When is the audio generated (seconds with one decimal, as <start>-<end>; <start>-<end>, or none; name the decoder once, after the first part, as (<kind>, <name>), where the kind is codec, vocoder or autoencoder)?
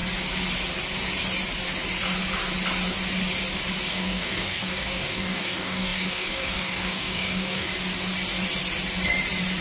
3.9-7.7 (codec, DAC)